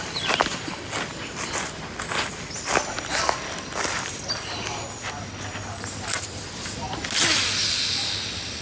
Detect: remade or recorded recorded